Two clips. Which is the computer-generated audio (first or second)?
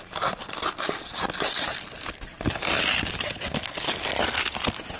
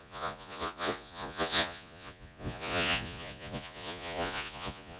second